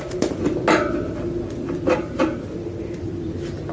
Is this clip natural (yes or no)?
yes